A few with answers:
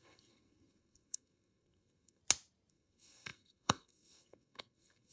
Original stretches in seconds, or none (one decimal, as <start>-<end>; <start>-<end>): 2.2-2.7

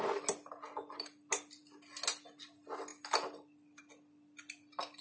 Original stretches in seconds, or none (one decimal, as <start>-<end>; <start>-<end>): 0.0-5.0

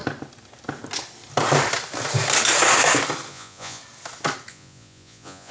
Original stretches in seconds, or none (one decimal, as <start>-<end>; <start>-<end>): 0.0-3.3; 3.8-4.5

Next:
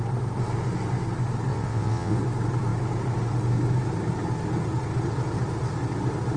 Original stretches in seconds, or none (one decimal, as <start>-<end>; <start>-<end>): 0.0-1.5; 2.2-6.4

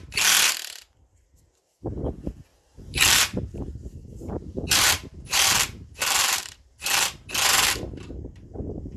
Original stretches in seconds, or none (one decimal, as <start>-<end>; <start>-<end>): 0.0-2.5; 7.3-9.0